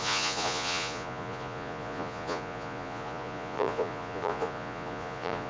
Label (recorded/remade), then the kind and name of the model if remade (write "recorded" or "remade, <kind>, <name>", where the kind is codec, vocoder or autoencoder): remade, vocoder, Vocos